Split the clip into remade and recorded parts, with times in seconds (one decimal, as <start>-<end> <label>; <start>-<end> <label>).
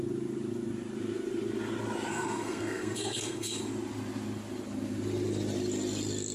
0.0-2.1 recorded; 2.1-3.6 remade; 3.6-6.3 recorded